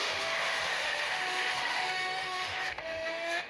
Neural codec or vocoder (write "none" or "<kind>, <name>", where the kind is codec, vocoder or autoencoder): autoencoder, DAC-VAE